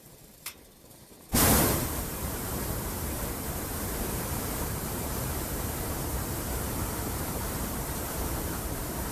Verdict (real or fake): fake